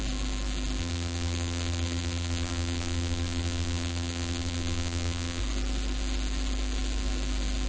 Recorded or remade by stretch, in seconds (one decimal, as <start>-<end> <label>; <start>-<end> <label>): 0.0-0.8 recorded; 0.8-5.4 remade; 5.4-7.7 recorded

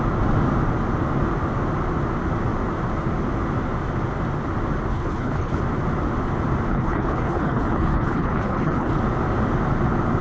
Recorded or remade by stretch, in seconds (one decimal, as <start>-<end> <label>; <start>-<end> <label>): 0.0-4.9 recorded; 4.9-5.6 remade; 5.6-6.7 recorded; 6.7-9.0 remade; 9.0-10.2 recorded